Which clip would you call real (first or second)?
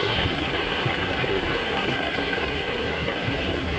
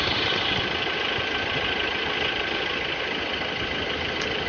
second